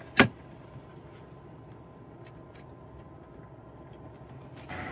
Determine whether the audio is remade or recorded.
recorded